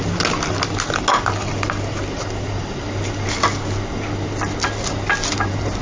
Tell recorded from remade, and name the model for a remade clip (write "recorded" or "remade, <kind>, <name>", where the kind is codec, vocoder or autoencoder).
recorded